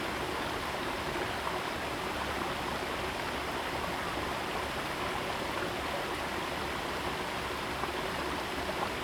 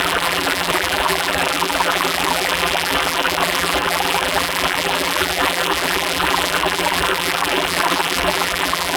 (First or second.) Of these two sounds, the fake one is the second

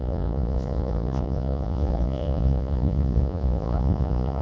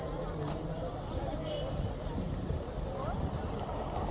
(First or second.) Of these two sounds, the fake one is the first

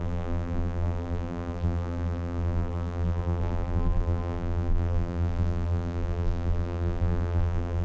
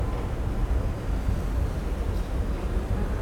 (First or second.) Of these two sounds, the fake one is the first